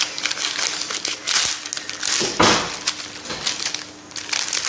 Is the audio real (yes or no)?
yes